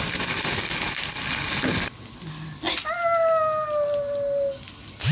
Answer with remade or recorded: recorded